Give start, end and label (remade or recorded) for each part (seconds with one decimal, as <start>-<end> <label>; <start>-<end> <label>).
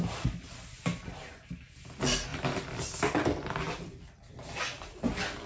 0.0-2.3 recorded; 2.3-4.6 remade; 4.6-5.5 recorded